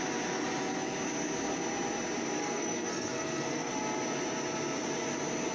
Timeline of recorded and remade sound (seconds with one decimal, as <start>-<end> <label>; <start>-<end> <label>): 0.0-2.4 recorded; 2.4-3.7 remade; 3.7-5.5 recorded